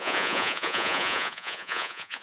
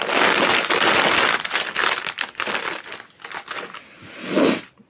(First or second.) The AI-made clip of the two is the first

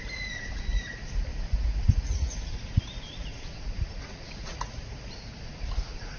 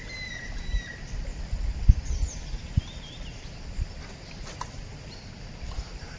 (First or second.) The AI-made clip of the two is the first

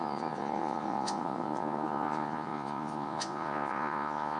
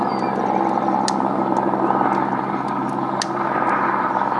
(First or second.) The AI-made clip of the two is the first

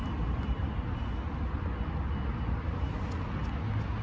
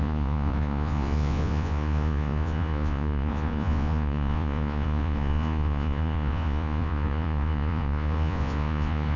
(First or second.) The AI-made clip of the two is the second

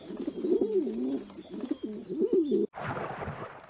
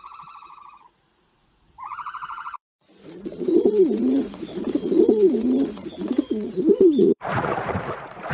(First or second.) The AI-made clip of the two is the second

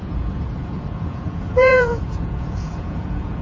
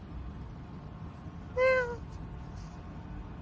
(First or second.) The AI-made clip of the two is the first